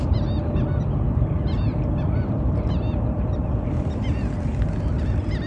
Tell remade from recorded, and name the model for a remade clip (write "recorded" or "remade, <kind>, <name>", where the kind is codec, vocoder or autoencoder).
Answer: remade, vocoder, BigVGAN v2